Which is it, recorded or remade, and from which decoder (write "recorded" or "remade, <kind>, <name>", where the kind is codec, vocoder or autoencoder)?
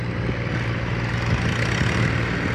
recorded